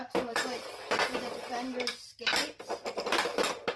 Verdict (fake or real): real